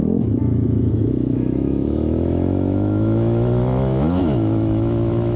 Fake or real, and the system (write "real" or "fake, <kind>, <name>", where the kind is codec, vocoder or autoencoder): fake, autoencoder, DAC-VAE